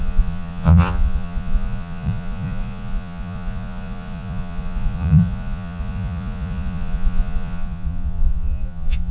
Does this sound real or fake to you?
fake